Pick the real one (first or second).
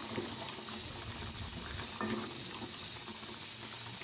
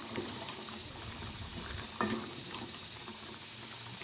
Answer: first